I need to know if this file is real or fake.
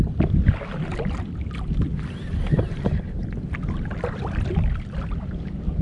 real